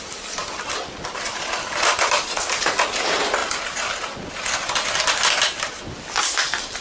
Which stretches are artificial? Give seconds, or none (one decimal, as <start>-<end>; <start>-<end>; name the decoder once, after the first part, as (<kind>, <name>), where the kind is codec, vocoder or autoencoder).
none